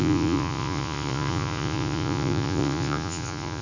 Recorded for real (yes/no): no